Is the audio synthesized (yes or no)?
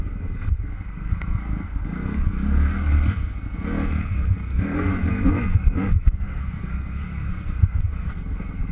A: yes